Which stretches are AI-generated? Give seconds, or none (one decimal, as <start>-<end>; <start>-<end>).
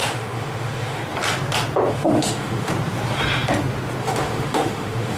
0.0-1.0; 1.9-2.7; 4.0-5.2